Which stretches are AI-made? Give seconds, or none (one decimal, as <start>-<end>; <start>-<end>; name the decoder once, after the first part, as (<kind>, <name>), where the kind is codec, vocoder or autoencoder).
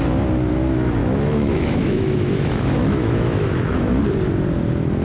1.0-4.0 (autoencoder, DAC-VAE)